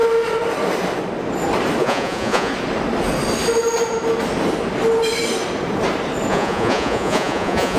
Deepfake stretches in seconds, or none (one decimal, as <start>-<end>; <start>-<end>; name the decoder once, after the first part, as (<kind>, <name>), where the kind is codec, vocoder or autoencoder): 1.8-2.5 (vocoder, Vocos); 6.3-7.8